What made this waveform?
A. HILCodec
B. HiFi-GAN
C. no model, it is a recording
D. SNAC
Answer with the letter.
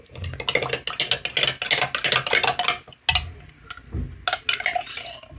C